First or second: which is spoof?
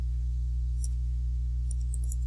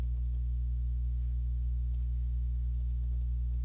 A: first